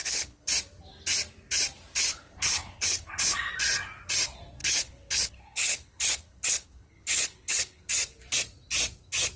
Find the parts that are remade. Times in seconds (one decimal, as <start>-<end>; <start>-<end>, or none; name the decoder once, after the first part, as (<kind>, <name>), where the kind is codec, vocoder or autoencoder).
0.0-0.5 (codec, HILCodec); 2.1-3.5; 4.6-7.9